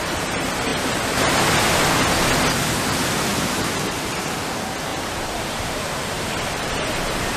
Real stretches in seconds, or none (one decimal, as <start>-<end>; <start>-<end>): 0.0-3.3; 4.5-4.9; 6.7-7.4

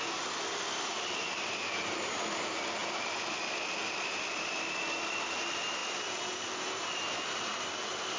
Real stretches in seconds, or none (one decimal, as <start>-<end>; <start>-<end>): none

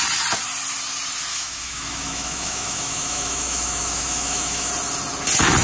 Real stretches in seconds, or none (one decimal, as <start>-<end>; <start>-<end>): 0.0-1.3; 4.7-5.6

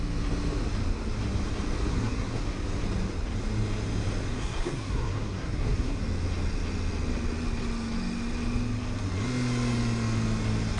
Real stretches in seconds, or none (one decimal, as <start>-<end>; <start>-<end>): 0.0-1.9; 2.4-4.3; 6.0-10.8

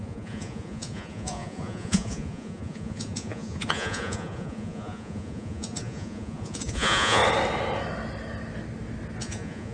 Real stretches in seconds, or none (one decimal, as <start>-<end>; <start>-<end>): 7.2-9.2

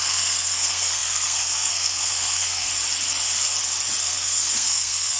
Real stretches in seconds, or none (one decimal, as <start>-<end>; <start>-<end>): 2.7-4.0

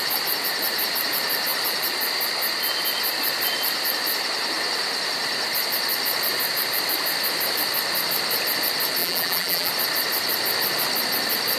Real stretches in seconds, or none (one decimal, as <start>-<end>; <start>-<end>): 0.0-9.0; 9.7-11.6